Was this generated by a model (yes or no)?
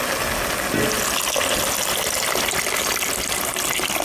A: no